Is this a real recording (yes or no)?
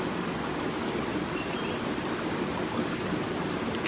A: yes